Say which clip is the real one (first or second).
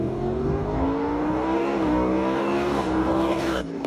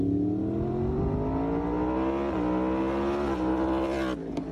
second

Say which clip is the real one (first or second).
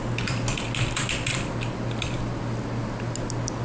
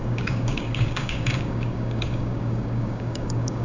first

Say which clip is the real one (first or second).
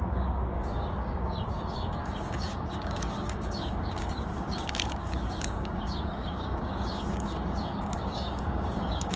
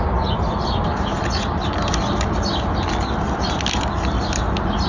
second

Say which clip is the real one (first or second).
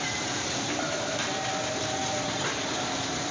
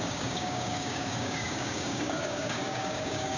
first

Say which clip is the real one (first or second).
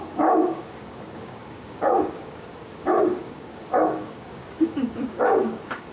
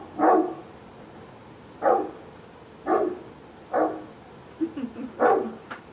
second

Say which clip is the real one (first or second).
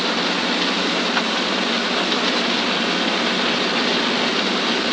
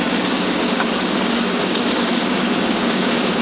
first